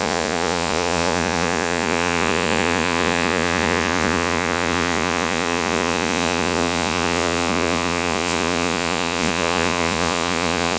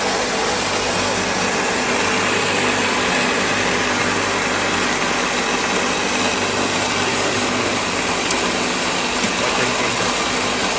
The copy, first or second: first